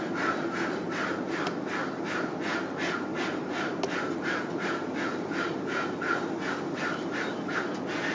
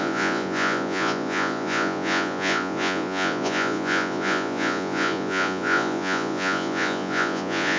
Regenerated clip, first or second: second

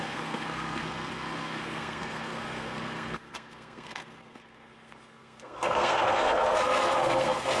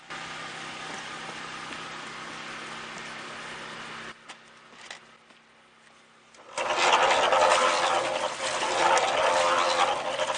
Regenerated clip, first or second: first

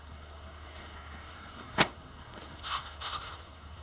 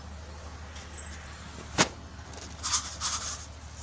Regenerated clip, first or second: first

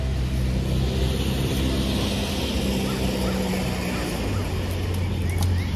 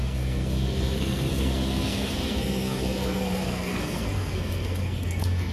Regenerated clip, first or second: second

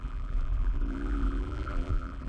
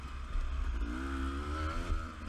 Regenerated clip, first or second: first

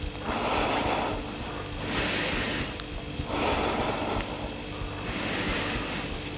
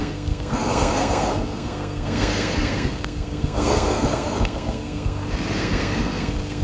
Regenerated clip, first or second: second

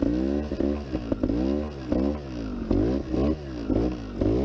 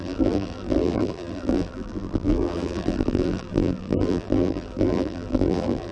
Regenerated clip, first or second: second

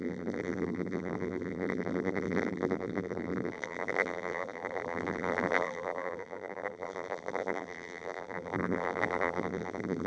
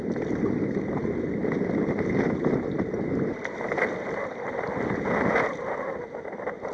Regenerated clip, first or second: first